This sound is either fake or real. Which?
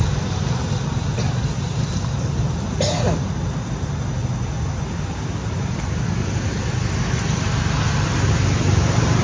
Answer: real